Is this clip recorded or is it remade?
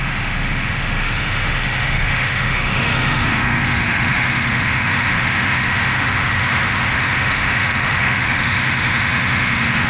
remade